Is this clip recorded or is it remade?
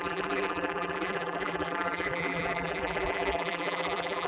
remade